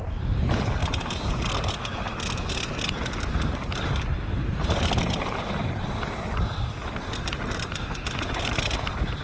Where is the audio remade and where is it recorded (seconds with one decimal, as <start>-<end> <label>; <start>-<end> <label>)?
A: 0.0-0.8 recorded; 0.8-1.4 remade; 1.4-9.2 recorded